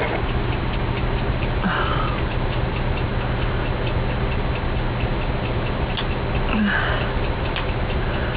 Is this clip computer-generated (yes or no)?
no